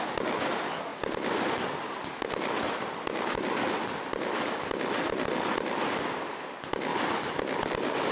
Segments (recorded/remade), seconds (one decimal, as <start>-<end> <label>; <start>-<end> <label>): 0.0-0.9 recorded; 0.9-5.3 remade; 5.3-6.9 recorded; 6.9-7.4 remade; 7.4-8.1 recorded